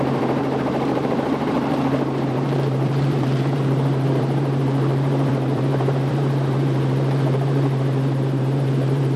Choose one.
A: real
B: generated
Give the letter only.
B